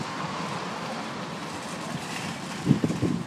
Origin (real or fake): real